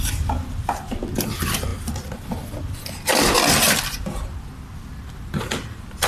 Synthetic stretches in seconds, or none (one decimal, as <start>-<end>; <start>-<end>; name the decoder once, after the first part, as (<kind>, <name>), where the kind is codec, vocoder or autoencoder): 0.0-6.1 (vocoder, BigVGAN v2)